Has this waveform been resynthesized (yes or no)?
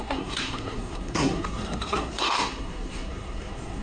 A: yes